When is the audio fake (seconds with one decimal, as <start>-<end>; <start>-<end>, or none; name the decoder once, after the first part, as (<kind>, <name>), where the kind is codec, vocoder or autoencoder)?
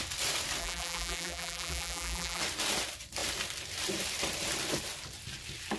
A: 0.6-2.4 (vocoder, BigVGAN v2)